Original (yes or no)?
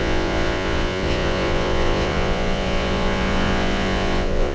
no